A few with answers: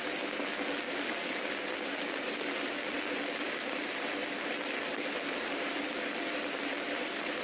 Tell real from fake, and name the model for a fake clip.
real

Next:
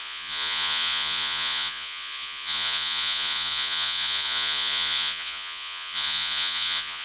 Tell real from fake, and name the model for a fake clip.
fake, vocoder, Vocos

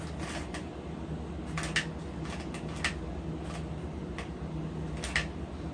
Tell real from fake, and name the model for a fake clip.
real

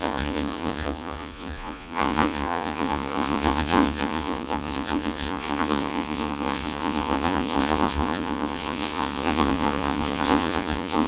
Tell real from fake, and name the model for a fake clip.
fake, vocoder, Vocos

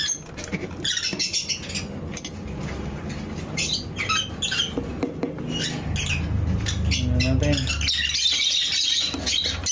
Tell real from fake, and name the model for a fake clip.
real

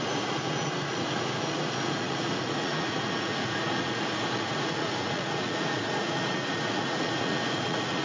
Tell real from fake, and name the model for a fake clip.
fake, vocoder, Vocos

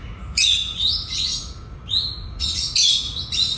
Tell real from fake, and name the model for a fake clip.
fake, vocoder, Vocos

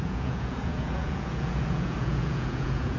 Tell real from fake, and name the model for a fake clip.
fake, vocoder, Vocos